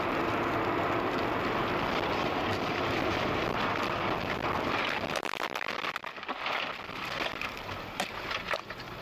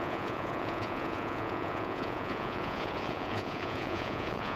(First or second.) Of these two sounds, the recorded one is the first